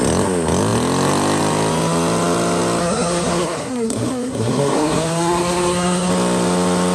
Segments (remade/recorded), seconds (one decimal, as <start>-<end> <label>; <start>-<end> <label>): 0.0-2.8 recorded; 2.8-6.1 remade; 6.1-6.9 recorded